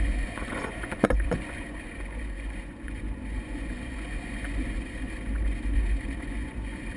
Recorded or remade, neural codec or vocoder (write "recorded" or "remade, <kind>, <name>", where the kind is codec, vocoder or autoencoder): remade, vocoder, Vocos